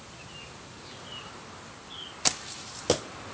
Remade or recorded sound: recorded